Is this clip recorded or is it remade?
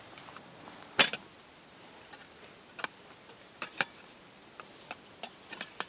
recorded